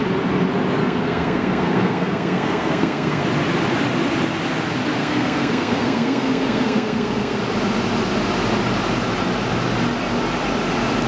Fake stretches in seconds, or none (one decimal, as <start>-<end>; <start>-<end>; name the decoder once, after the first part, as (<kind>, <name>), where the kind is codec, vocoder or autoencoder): 0.8-3.2 (codec, SNAC); 5.0-7.4